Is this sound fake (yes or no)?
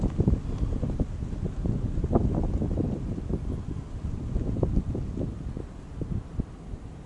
no